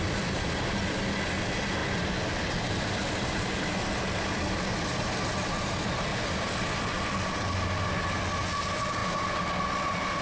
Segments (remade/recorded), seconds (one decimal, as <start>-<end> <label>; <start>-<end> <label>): 0.0-10.2 recorded